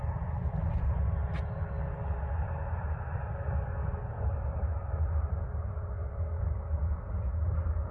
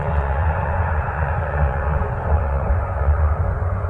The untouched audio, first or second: first